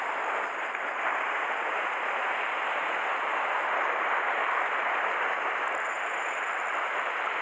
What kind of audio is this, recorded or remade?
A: recorded